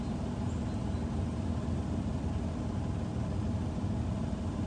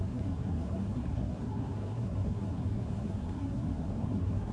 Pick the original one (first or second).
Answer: first